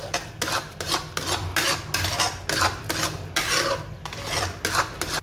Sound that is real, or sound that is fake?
real